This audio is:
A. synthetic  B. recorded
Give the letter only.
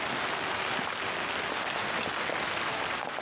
B